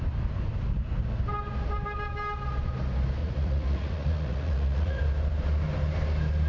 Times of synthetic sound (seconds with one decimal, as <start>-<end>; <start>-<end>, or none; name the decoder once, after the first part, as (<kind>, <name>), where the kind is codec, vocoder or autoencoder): 3.2-5.0 (vocoder, Vocos)